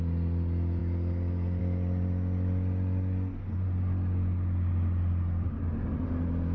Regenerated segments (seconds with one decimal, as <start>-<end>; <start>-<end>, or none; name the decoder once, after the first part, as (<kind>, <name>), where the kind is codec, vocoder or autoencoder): none